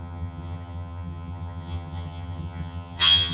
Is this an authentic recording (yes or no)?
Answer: no